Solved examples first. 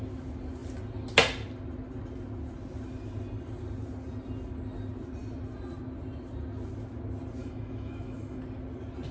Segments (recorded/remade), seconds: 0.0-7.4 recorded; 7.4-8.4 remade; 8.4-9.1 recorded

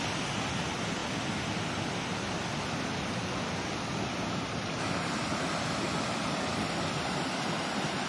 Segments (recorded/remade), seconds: 0.0-8.1 recorded

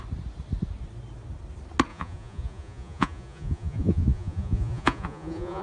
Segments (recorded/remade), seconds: 0.0-1.9 recorded; 1.9-5.6 remade

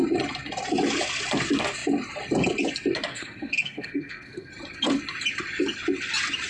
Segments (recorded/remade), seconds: 0.0-3.1 recorded; 3.1-4.5 remade; 4.5-6.5 recorded

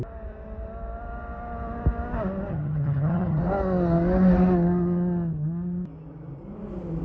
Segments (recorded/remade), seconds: 0.0-2.5 recorded; 2.5-3.4 remade; 3.4-7.0 recorded